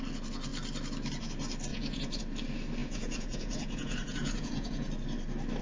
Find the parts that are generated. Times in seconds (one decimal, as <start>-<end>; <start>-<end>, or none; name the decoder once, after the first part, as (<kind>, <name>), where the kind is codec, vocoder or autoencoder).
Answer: 1.7-2.2 (vocoder, Vocos); 2.8-4.9